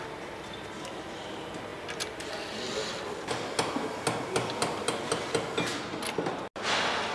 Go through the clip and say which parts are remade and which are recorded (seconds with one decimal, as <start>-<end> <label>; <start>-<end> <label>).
0.0-7.1 recorded